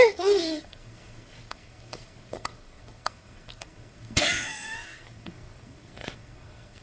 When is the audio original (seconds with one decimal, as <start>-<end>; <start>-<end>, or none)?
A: none